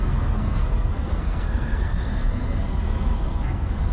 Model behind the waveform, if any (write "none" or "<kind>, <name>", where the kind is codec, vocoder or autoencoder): codec, SNAC